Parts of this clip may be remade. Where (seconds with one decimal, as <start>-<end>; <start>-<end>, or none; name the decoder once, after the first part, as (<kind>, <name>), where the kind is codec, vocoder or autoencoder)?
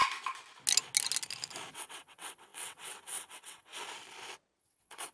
1.7-3.7 (vocoder, WaveNeXt); 4.6-5.1